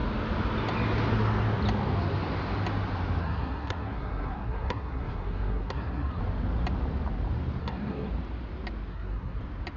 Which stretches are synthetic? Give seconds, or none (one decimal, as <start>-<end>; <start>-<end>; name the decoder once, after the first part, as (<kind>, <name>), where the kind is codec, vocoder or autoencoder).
3.2-6.2 (codec, SNAC); 7.6-8.1; 8.9-9.4